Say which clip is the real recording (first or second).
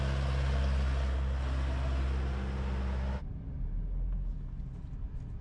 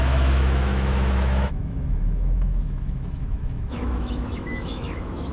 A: first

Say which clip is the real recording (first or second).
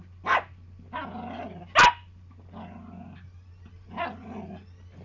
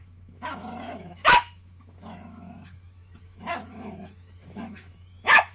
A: first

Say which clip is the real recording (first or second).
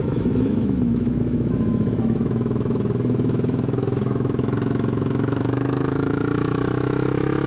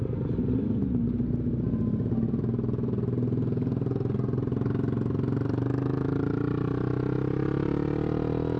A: second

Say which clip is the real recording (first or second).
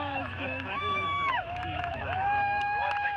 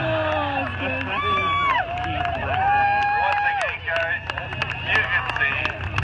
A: second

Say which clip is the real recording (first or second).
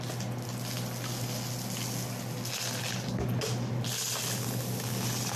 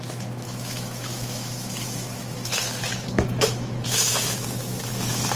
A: first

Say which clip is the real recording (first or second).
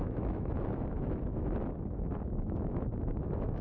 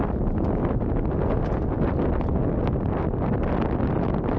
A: second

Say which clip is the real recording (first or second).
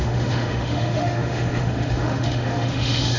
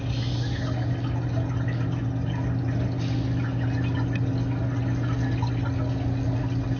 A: second